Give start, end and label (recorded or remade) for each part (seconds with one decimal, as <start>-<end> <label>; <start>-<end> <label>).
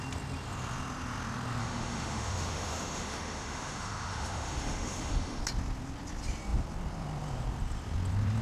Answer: 0.0-1.6 recorded; 1.6-5.4 remade; 5.4-8.4 recorded